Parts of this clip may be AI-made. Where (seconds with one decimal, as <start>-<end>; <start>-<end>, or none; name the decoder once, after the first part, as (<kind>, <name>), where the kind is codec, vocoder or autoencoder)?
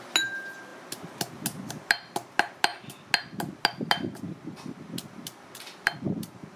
none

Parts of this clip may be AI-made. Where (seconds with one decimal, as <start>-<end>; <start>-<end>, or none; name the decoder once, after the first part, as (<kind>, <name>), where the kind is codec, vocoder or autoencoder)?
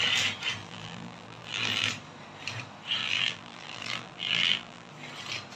0.6-1.9 (vocoder, BigVGAN v2); 3.0-4.9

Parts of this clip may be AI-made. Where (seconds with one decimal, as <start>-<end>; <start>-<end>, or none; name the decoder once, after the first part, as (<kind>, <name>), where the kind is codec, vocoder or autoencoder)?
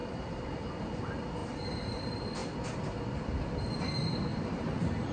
1.4-2.0 (vocoder, BigVGAN v2); 4.3-5.1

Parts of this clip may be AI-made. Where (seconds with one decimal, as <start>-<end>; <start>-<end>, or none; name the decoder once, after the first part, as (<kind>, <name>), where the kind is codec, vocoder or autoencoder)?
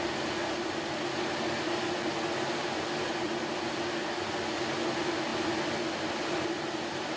none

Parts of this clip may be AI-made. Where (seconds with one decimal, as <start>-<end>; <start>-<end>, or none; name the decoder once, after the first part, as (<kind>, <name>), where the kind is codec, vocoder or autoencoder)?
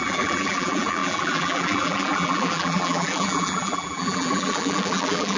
0.0-5.4 (vocoder, BigVGAN v2)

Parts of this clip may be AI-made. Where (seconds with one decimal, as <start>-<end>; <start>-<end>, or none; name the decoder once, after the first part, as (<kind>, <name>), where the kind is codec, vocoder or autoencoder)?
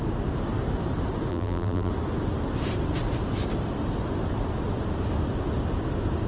1.3-1.9 (vocoder, BigVGAN v2)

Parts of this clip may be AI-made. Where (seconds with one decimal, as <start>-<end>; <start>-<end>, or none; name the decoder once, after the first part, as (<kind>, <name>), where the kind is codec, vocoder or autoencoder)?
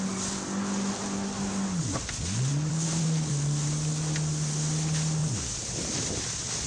2.5-3.3 (vocoder, BigVGAN v2); 5.2-6.1